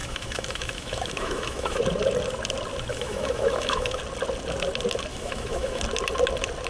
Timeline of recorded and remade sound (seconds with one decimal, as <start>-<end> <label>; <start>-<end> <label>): 0.0-1.8 remade; 1.8-2.9 recorded; 2.9-4.0 remade; 4.0-5.1 recorded; 5.1-5.8 remade; 5.8-6.7 recorded